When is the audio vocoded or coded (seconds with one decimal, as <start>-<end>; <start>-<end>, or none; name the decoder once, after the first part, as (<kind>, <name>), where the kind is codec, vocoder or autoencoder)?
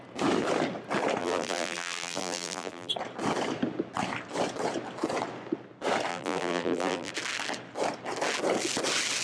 1.2-2.9 (vocoder, BigVGAN v2); 6.1-7.1